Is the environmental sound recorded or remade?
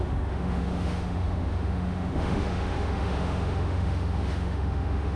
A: remade